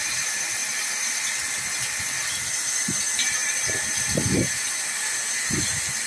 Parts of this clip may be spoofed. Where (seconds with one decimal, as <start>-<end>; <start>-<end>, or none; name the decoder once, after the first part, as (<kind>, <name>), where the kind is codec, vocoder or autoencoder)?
none